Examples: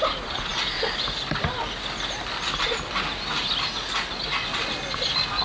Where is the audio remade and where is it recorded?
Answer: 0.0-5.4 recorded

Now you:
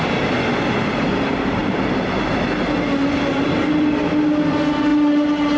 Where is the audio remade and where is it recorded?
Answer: 0.0-5.6 recorded

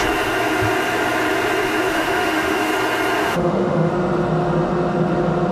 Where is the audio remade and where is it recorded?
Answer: 0.0-1.9 recorded; 1.9-2.7 remade; 2.7-3.2 recorded; 3.2-3.9 remade; 3.9-5.5 recorded

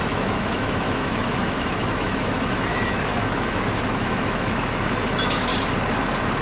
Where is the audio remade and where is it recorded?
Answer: 0.0-5.5 remade; 5.5-6.4 recorded

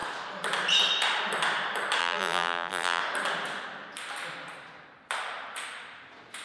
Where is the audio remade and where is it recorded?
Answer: 0.0-2.0 recorded; 2.0-3.0 remade; 3.0-6.4 recorded

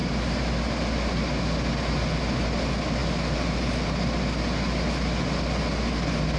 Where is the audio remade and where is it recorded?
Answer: 0.0-6.4 recorded

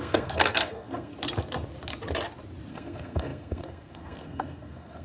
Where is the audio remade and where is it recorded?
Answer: 0.0-1.1 remade; 1.1-2.7 recorded; 2.7-5.0 remade